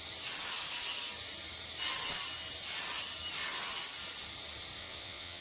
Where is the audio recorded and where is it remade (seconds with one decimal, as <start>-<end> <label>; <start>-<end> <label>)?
0.0-4.8 recorded; 4.8-5.4 remade